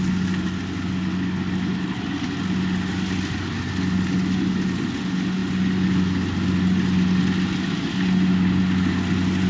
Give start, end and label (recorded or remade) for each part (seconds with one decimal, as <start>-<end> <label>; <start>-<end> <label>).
0.0-9.5 recorded